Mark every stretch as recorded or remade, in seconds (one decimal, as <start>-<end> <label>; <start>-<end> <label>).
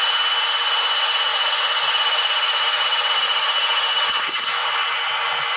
0.0-1.3 recorded; 1.3-4.7 remade; 4.7-5.6 recorded